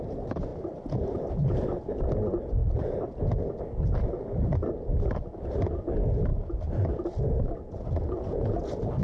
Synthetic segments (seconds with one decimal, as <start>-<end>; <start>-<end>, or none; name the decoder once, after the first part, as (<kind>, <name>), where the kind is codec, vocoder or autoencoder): 0.5-1.3 (vocoder, BigVGAN v2); 2.6-3.2